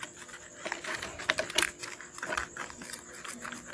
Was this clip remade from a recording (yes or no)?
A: no